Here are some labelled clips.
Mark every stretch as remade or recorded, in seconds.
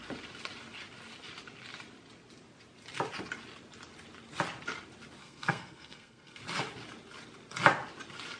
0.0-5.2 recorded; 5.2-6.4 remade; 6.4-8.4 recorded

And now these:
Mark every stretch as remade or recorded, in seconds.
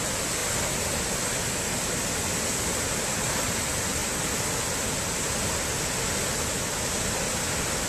0.0-7.9 recorded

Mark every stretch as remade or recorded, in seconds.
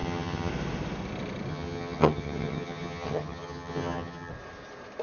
0.0-0.5 remade; 0.5-1.5 recorded; 1.5-4.3 remade; 4.3-5.0 recorded